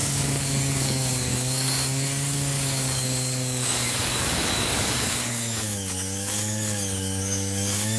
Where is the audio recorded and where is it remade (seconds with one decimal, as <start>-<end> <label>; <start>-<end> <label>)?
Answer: 0.0-8.0 remade